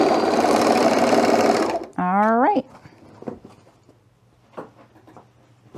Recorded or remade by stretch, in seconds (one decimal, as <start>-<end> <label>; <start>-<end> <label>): 0.0-1.9 remade; 1.9-5.8 recorded